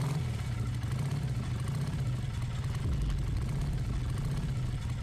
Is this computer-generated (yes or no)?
no